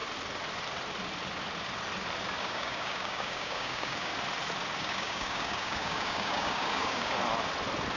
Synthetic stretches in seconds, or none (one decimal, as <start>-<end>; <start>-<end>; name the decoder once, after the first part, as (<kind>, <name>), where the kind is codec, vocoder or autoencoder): 2.4-4.1 (codec, DAC); 4.8-7.2